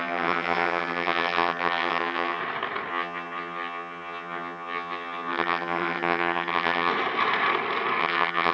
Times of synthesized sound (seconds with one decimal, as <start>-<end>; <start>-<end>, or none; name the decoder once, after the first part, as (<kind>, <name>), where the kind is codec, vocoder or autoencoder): 0.0-2.4 (vocoder, HiFi-GAN); 2.9-6.9; 8.0-8.5